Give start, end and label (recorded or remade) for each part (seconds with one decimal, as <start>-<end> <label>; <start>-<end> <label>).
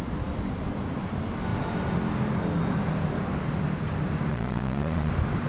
0.0-4.3 recorded; 4.3-5.1 remade; 5.1-5.5 recorded